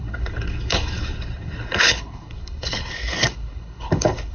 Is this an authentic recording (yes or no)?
no